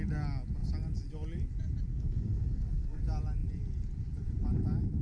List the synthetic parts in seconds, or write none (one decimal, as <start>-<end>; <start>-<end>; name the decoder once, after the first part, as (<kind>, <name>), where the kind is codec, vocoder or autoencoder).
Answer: 1.9-3.0 (codec, SNAC)